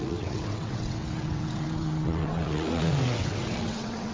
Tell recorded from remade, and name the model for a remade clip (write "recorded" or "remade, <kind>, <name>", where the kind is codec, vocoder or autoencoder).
remade, vocoder, WaveNeXt